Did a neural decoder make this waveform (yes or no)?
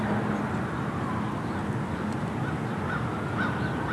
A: no